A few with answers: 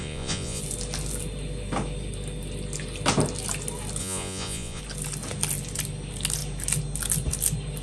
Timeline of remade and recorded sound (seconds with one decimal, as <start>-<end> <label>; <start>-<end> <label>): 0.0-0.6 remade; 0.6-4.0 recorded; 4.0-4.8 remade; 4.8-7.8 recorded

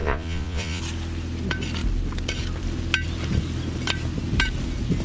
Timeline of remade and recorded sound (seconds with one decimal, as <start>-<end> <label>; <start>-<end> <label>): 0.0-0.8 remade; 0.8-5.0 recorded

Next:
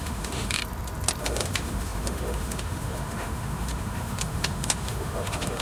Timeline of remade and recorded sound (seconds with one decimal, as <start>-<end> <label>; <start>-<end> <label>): 0.0-0.6 remade; 0.6-1.2 recorded; 1.2-5.6 remade

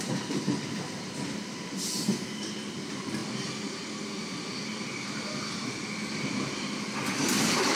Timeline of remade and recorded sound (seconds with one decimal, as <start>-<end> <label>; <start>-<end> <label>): 0.0-7.8 recorded